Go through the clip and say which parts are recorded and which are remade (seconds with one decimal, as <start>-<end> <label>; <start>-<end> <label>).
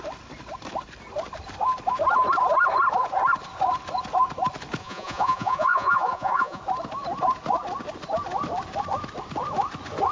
0.0-4.8 recorded; 4.8-6.6 remade; 6.6-10.1 recorded